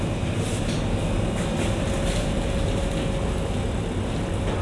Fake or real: real